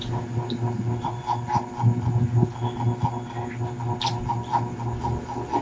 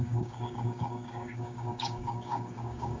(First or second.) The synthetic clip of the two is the second